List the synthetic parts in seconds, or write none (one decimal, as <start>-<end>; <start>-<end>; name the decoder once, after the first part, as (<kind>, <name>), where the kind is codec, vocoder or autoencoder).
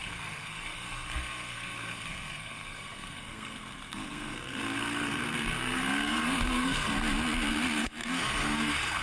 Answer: 0.0-6.9 (codec, SNAC); 7.5-9.0